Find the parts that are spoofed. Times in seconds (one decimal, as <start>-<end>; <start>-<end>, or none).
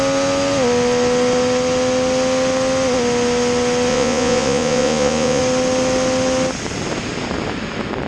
3.9-5.4